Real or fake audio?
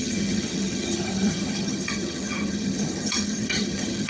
fake